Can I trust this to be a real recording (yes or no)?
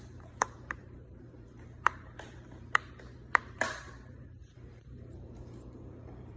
no